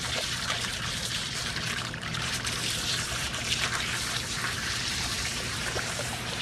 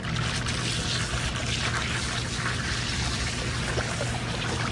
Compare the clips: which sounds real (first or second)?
second